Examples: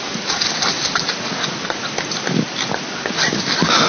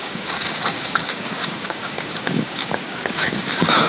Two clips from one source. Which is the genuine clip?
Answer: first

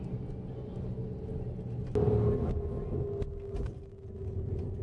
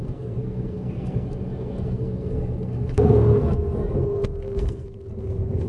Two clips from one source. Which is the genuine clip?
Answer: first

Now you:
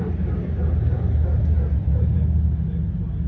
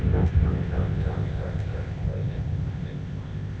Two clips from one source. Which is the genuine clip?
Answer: first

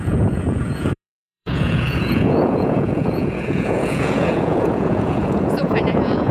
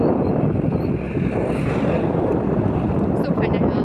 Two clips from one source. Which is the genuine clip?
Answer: second